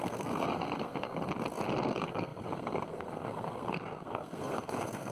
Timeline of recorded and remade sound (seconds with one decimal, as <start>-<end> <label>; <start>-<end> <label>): 0.0-1.2 remade; 1.2-1.9 recorded; 1.9-5.1 remade